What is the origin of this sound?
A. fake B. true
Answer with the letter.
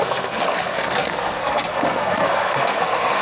A